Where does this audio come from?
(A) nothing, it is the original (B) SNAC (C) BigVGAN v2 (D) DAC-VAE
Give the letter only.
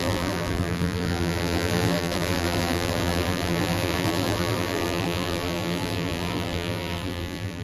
C